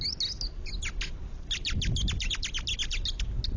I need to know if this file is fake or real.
real